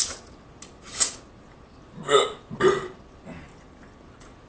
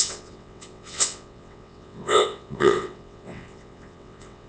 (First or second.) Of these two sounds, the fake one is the second